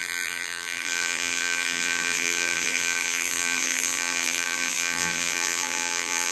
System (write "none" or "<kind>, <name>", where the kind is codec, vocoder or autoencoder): vocoder, BigVGAN v2